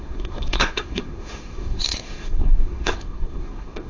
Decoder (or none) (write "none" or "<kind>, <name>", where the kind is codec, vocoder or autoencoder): codec, SNAC